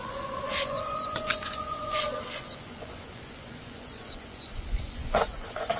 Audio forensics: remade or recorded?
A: remade